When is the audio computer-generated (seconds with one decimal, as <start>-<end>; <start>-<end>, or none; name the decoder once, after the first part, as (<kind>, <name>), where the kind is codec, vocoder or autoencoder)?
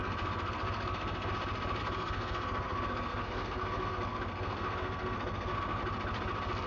0.0-1.3 (codec, SNAC); 1.8-5.8